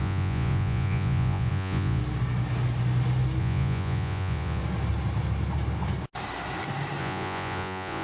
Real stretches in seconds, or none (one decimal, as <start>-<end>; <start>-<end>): 2.0-3.4; 4.6-7.0